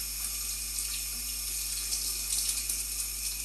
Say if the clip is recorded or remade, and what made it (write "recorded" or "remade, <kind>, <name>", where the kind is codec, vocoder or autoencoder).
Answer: recorded